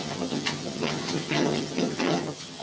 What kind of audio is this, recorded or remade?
remade